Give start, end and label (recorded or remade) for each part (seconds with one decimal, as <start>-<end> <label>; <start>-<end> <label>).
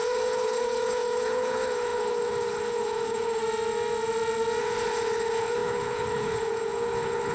0.0-3.4 remade; 3.4-4.6 recorded; 4.6-7.3 remade